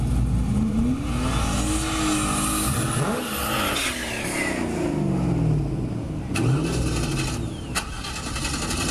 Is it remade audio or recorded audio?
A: recorded